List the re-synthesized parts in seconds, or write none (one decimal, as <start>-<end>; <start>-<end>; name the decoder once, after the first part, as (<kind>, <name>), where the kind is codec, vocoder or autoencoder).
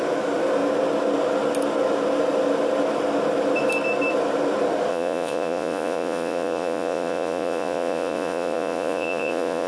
4.9-9.7 (vocoder, Vocos)